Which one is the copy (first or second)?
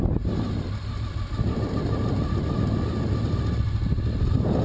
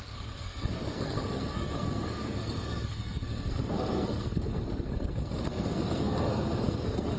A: second